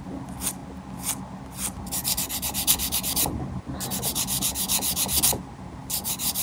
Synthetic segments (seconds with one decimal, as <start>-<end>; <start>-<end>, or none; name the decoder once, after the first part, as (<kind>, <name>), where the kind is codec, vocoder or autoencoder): 5.8-6.4 (vocoder, BigVGAN v2)